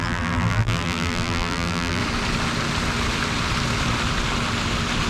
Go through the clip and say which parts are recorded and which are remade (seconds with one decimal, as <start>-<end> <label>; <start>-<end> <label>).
0.0-2.0 remade; 2.0-5.1 recorded